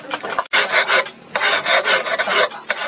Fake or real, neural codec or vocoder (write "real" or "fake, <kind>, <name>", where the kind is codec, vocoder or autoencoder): real